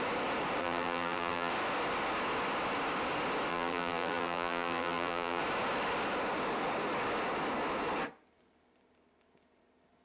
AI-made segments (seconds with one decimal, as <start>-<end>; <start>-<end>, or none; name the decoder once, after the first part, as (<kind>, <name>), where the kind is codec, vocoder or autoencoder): 0.6-1.5 (vocoder, BigVGAN v2); 3.5-5.4